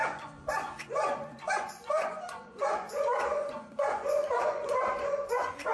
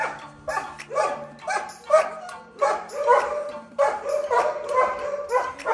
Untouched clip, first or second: second